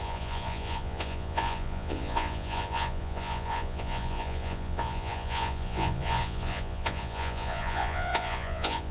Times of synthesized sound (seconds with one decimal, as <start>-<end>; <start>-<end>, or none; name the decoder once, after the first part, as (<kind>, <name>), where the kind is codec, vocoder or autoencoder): 0.0-8.9 (vocoder, Vocos)